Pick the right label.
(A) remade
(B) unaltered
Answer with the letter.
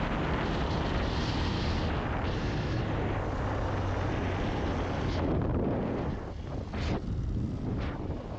B